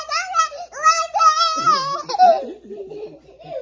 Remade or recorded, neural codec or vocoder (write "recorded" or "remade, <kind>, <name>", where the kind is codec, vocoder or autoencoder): recorded